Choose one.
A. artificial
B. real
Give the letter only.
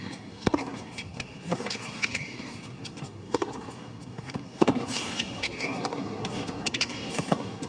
A